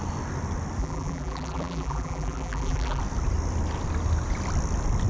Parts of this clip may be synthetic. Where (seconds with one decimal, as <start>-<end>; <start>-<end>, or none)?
0.8-3.0